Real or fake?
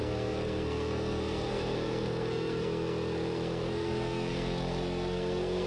fake